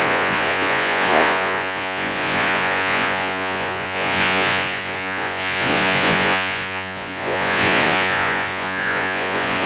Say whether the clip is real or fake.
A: fake